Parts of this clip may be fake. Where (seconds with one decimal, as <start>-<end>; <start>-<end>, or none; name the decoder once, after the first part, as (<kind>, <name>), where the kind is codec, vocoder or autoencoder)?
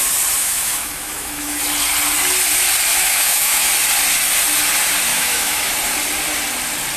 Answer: 0.4-1.6 (autoencoder, DAC-VAE); 2.9-3.7; 5.1-5.7